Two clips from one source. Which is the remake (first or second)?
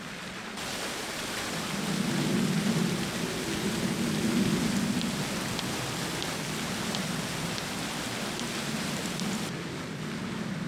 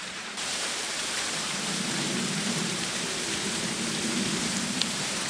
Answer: second